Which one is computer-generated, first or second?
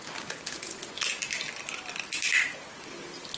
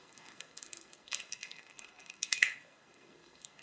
second